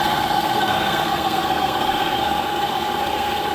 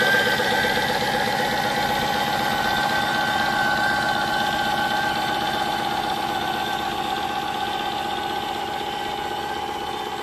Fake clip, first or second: first